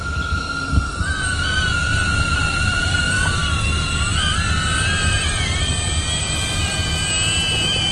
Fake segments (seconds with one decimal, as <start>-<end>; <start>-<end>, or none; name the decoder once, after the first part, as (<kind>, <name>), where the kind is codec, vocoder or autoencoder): 0.0-3.4 (vocoder, BigVGAN v2); 4.1-5.7; 6.2-6.9